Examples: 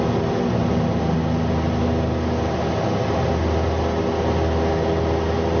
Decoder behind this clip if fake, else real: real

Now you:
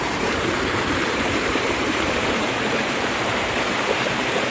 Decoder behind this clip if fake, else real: fake, vocoder, BigVGAN v2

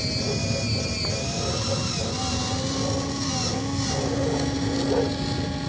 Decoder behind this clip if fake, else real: real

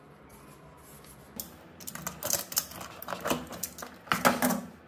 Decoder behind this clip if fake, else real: real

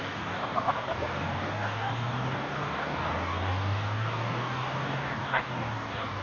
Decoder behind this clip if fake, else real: fake, codec, DAC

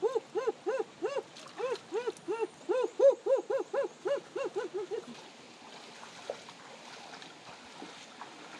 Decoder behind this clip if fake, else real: real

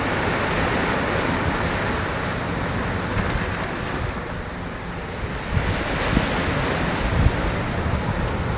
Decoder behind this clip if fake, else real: real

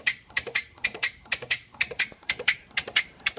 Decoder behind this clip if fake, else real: fake, vocoder, BigVGAN v2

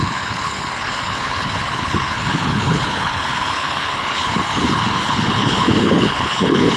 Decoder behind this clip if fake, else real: fake, codec, HILCodec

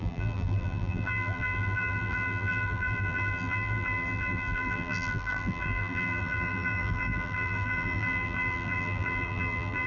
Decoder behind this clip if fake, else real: fake, vocoder, BigVGAN v2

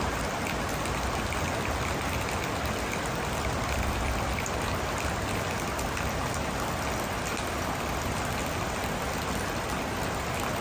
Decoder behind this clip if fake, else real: real